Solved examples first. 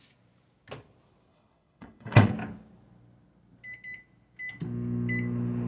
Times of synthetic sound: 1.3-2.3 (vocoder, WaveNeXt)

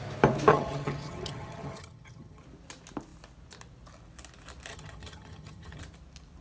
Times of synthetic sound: 0.5-2.4 (vocoder, HiFi-GAN); 4.7-5.8

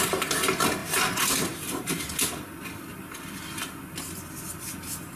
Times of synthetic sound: none